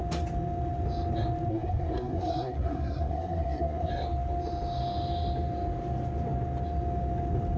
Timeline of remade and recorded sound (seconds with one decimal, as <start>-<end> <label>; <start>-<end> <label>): 0.0-1.5 recorded; 1.5-3.9 remade; 3.9-7.6 recorded